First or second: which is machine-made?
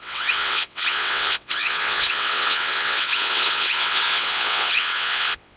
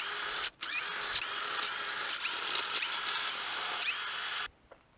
first